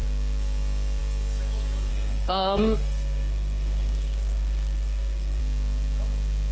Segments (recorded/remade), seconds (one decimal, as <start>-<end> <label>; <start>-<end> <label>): 0.0-1.9 recorded; 1.9-5.4 remade; 5.4-6.5 recorded